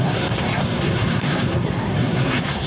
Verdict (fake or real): fake